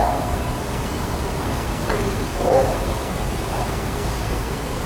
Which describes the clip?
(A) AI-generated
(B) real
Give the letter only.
A